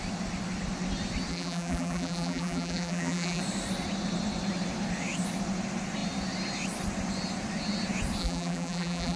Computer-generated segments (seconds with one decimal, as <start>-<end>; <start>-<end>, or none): 1.3-3.4; 8.2-9.2